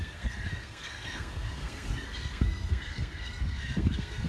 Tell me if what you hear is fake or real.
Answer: fake